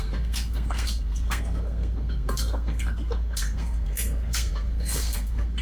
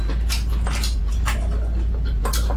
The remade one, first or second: first